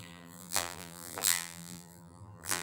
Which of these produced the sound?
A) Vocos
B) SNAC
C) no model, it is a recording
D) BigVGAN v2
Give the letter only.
D